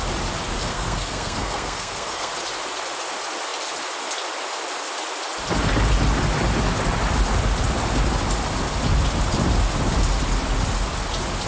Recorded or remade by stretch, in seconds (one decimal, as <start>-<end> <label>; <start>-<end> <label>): 0.0-0.7 recorded; 0.7-2.3 remade; 2.3-11.5 recorded

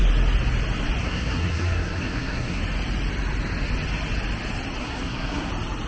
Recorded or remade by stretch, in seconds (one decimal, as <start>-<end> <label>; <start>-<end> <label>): 0.0-1.0 recorded; 1.0-2.6 remade; 2.6-4.8 recorded; 4.8-5.5 remade; 5.5-5.9 recorded

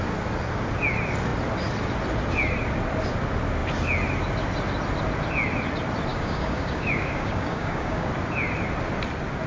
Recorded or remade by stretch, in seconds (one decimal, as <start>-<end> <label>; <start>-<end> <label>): 0.0-6.1 recorded; 6.1-8.1 remade; 8.1-9.5 recorded

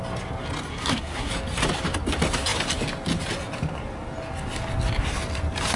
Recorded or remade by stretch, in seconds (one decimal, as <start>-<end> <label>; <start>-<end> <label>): 0.0-0.7 recorded; 0.7-1.3 remade; 1.3-5.8 recorded

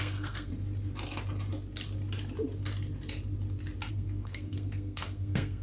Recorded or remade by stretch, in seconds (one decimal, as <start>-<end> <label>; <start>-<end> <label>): 0.0-0.5 remade; 0.5-3.9 recorded; 3.9-5.6 remade

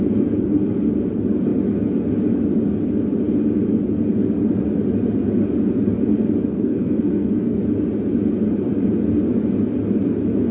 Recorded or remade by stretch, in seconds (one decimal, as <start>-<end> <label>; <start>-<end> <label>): 0.0-6.5 recorded; 6.5-7.6 remade; 7.6-10.5 recorded

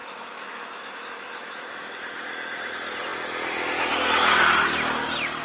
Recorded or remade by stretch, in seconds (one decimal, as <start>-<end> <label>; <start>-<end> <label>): 0.0-2.7 remade; 2.7-5.4 recorded

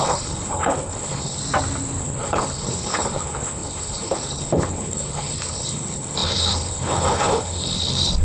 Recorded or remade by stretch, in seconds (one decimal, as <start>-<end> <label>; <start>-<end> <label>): 0.0-1.4 remade; 1.4-2.0 recorded; 2.0-8.2 remade